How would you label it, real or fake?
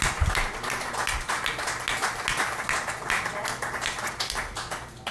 real